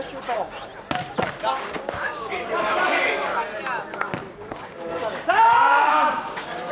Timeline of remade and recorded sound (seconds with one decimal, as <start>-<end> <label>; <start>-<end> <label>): 0.0-0.7 remade; 0.7-1.6 recorded; 1.6-3.3 remade; 3.3-4.3 recorded; 4.3-6.7 remade